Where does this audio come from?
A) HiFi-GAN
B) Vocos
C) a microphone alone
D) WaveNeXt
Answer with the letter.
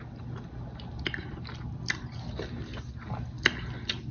C